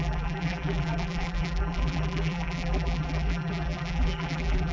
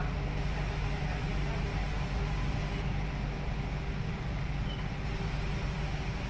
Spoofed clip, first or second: first